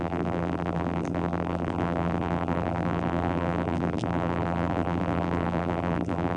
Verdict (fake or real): fake